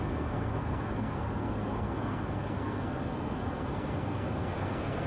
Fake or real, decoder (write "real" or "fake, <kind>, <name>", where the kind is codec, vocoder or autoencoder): fake, codec, SNAC